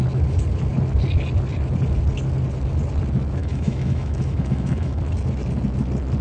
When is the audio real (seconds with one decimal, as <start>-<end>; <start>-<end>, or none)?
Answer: 0.0-3.4; 5.0-6.2